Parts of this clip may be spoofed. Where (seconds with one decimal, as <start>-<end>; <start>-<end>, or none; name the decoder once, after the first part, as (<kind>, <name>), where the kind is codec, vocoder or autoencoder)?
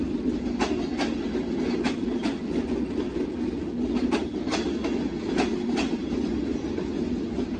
none